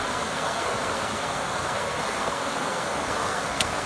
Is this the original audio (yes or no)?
no